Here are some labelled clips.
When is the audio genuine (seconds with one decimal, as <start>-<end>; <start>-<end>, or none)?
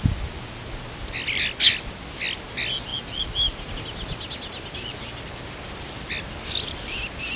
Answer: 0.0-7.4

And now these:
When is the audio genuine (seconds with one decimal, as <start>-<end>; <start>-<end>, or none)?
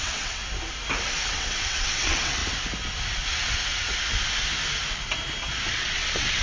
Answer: 0.4-1.3; 2.4-5.7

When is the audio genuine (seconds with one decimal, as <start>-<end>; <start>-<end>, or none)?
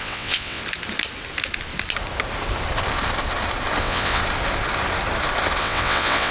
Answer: 0.6-3.8; 4.2-5.6